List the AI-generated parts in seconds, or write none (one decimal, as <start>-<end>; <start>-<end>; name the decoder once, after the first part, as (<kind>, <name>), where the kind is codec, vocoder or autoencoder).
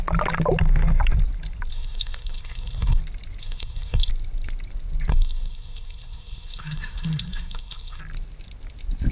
1.7-3.0 (codec, SNAC); 3.4-4.1; 5.1-8.0